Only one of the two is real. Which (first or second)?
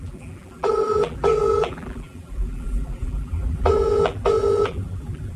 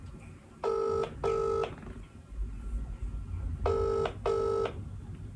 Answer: second